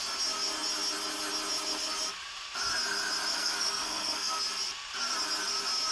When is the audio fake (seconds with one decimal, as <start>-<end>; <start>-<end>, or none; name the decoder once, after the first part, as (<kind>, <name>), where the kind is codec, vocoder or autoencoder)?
3.3-4.4 (codec, SNAC)